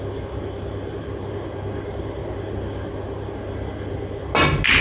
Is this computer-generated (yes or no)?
no